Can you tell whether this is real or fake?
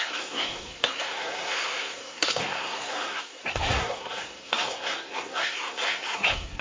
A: fake